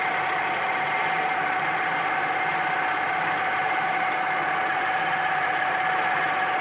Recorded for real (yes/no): yes